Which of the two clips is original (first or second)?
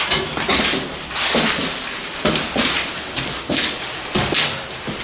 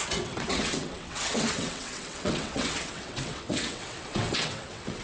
first